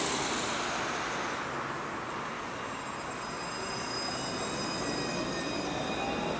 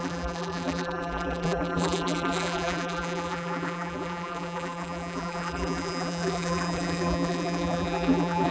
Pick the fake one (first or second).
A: second